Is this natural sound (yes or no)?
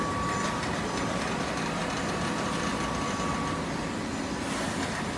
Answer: yes